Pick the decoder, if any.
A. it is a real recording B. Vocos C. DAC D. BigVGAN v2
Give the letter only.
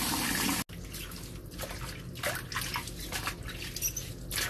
A